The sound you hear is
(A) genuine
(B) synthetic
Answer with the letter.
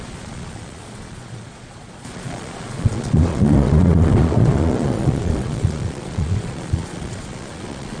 B